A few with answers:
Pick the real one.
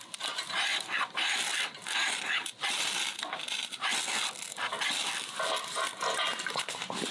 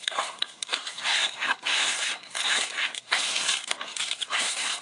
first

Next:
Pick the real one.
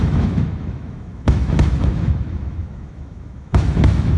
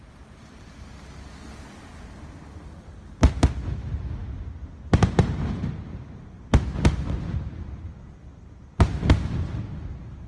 second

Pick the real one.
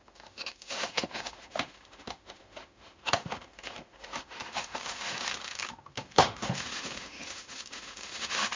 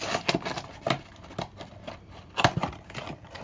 second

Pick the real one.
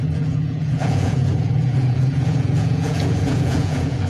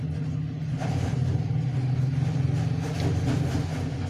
second